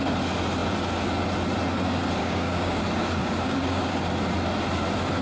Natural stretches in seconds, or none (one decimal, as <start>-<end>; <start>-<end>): 0.0-2.2; 2.8-3.2; 3.9-5.2

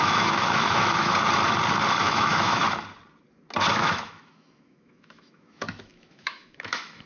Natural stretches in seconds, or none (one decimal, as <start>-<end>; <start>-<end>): 1.1-2.0; 2.6-3.7